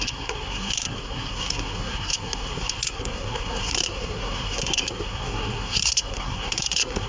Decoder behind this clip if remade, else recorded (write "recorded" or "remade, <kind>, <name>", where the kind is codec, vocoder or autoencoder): remade, codec, SNAC